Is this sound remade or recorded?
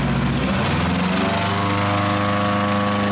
recorded